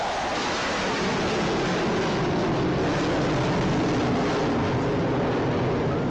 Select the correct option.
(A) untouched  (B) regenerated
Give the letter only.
A